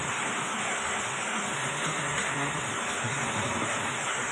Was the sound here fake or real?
fake